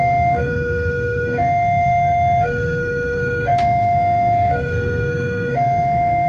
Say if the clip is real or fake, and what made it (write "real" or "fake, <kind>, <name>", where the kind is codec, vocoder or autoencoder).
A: fake, codec, SNAC